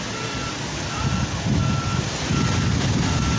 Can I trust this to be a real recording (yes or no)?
yes